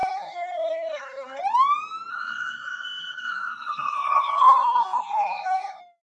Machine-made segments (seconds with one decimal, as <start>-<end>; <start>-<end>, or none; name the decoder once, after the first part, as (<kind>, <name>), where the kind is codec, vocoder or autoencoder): 0.0-1.4 (codec, SNAC); 2.1-5.8